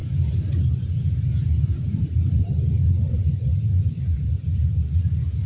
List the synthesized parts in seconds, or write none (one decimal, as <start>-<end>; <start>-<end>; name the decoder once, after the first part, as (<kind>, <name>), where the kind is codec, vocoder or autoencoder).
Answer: 0.0-0.6 (vocoder, BigVGAN v2); 1.3-4.6